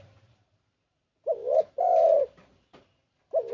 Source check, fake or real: fake